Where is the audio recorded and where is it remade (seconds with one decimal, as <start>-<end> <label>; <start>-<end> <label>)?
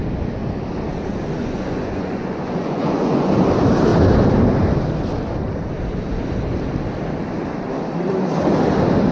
0.0-1.4 recorded; 1.4-3.3 remade; 3.3-9.1 recorded